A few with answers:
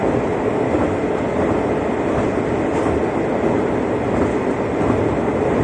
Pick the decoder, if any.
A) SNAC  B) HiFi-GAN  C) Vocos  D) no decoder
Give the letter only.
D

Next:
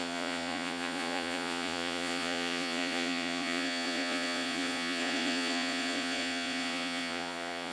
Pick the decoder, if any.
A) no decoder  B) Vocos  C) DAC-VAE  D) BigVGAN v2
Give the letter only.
B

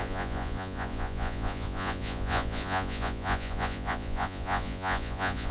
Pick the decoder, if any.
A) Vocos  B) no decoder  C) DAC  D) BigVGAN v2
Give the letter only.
A